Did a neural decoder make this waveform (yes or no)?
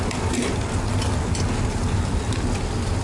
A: no